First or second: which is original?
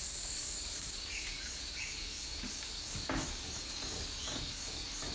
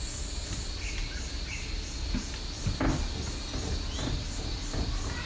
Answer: second